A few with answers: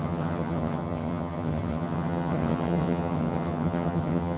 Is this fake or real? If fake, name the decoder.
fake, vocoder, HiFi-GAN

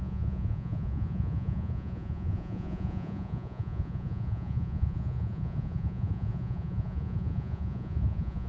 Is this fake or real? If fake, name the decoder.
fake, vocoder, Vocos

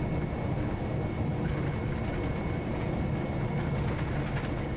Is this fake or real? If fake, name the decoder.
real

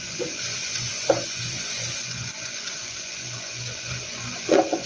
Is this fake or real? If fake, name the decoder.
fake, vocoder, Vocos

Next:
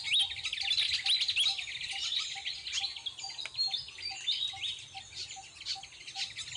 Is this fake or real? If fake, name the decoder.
real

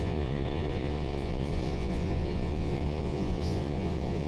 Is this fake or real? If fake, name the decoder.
fake, vocoder, Vocos